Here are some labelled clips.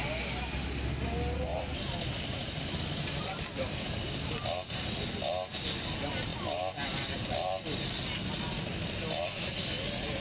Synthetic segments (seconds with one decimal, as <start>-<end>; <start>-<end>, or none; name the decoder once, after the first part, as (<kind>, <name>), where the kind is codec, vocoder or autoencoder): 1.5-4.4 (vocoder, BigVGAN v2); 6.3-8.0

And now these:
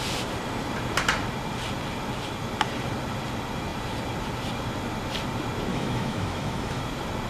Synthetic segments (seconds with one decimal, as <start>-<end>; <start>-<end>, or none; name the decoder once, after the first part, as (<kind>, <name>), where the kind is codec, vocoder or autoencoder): 5.7-6.8 (autoencoder, DAC-VAE)

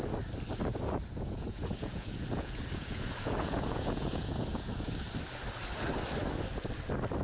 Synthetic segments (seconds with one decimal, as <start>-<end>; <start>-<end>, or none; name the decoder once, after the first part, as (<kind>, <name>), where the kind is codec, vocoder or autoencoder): 0.7-4.9 (vocoder, Vocos)